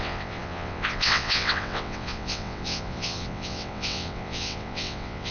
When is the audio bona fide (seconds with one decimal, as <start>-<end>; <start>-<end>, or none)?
none